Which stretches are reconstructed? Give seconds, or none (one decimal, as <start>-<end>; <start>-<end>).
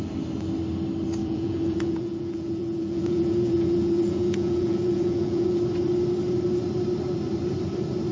1.2-5.6